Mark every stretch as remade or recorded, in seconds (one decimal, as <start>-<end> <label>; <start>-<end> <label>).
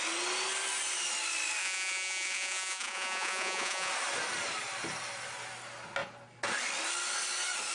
0.0-1.6 recorded; 1.6-3.9 remade; 3.9-7.7 recorded